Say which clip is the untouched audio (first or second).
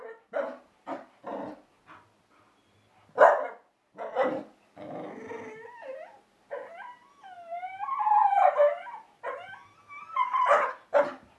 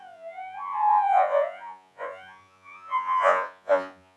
first